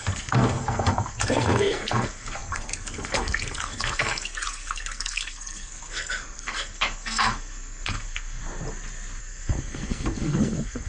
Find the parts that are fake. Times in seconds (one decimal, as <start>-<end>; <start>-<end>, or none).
0.0-8.4; 9.2-10.9